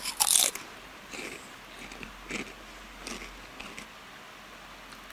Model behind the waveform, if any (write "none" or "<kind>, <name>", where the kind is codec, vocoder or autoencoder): none